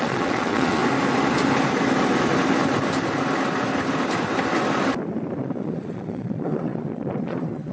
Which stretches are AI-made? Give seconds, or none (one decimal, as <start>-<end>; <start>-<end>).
0.0-0.8; 5.4-7.7